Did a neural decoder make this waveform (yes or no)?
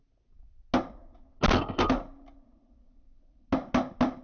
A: no